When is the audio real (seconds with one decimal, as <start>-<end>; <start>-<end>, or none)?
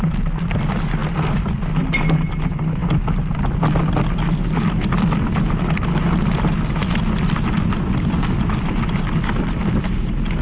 0.0-10.4